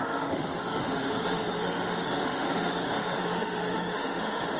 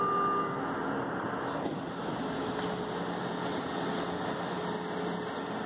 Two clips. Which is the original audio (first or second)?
second